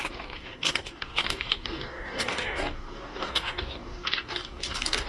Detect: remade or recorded remade